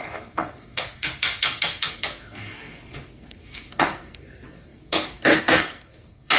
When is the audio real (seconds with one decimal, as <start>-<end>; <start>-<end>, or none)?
none